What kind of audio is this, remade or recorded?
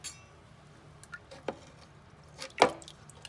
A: recorded